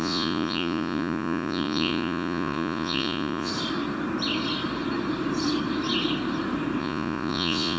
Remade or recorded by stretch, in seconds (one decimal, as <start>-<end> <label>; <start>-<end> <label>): 0.0-3.5 remade; 3.5-6.8 recorded; 6.8-7.8 remade